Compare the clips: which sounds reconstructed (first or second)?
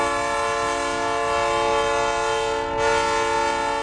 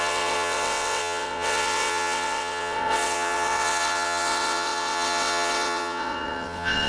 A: second